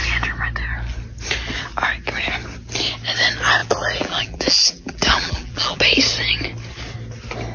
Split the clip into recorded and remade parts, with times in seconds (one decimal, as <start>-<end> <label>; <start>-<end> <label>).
0.0-3.6 recorded; 3.6-5.8 remade; 5.8-7.5 recorded